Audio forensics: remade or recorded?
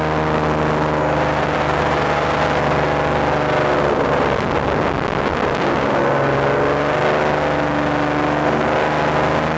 recorded